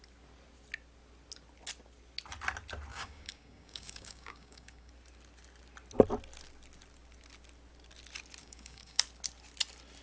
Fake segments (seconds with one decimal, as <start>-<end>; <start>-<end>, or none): 2.9-4.9; 8.4-9.0